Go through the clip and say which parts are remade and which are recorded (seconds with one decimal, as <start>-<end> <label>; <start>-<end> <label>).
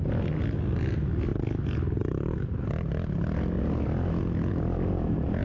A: 0.0-5.4 recorded